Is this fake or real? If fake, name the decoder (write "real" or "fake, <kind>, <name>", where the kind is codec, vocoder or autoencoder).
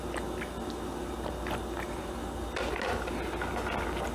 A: real